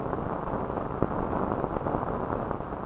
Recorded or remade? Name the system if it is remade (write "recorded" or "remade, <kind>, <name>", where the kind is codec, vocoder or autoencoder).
recorded